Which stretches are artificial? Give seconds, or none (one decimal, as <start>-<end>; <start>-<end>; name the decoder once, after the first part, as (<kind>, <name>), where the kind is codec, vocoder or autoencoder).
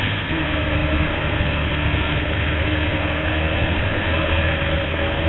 0.0-5.3 (codec, SNAC)